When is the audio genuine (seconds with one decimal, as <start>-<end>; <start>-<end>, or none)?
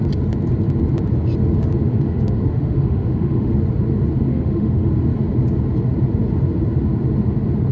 0.0-1.9; 3.5-4.3; 4.9-7.7